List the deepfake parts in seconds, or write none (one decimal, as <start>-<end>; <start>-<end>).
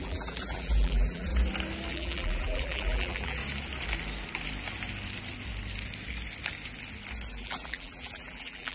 0.0-1.3; 1.9-3.4; 7.3-8.7